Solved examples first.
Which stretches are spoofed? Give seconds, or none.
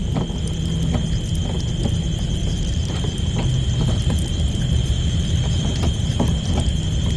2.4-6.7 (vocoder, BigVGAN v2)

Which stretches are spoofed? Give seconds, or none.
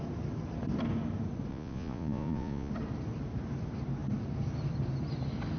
1.5-2.7 (vocoder, Vocos)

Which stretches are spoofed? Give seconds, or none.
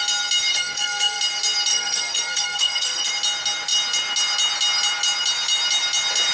0.5-1.2 (codec, SNAC); 1.7-3.1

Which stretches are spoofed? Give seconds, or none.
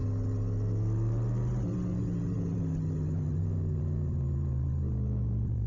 none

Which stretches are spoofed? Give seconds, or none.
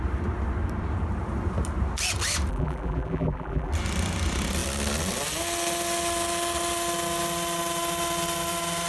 2.5-3.7 (vocoder, BigVGAN v2)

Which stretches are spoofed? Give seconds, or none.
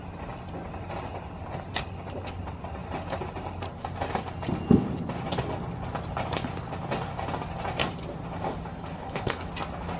8.9-9.4 (codec, HILCodec)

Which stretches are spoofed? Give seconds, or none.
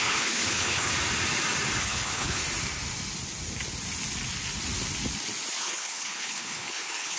0.0-0.9 (codec, HILCodec); 1.8-2.4; 5.6-7.2